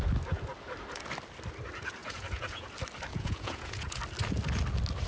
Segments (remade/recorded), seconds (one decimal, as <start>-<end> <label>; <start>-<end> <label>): 0.0-2.0 recorded; 2.0-2.7 remade; 2.7-3.1 recorded; 3.1-4.0 remade; 4.0-5.1 recorded